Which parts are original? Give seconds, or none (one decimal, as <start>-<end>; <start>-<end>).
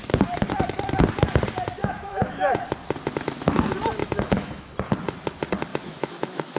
0.0-1.8; 2.5-4.0; 4.7-5.7